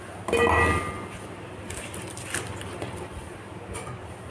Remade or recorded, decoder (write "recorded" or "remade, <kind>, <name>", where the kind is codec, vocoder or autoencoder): recorded